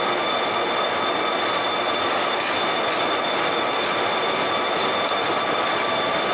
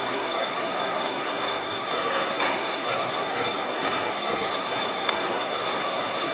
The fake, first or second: second